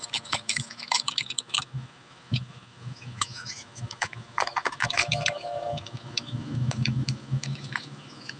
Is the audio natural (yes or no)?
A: no